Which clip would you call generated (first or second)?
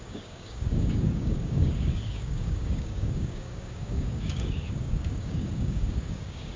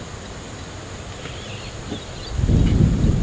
first